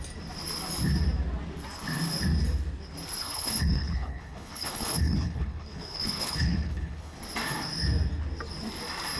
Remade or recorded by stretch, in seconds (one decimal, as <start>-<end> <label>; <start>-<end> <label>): 0.0-3.2 recorded; 3.2-7.2 remade; 7.2-9.2 recorded